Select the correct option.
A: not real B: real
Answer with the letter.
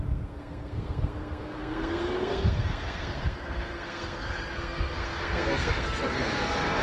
A